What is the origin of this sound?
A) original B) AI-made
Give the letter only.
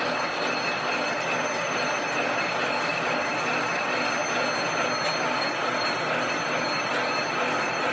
A